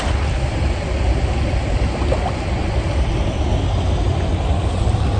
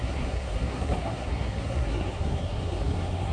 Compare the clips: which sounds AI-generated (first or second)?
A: second